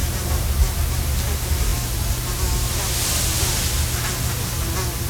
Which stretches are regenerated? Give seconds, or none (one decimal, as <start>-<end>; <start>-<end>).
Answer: 0.0-1.0